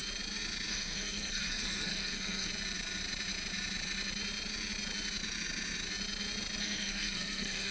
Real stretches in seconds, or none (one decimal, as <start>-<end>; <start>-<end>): 0.0-0.7; 2.5-6.6